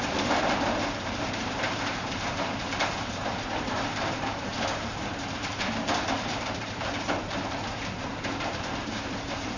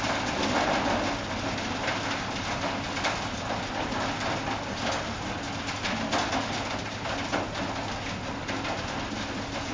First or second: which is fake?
first